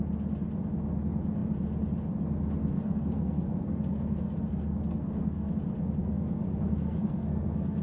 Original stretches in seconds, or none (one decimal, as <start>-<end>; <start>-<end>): 0.0-2.6; 5.5-6.0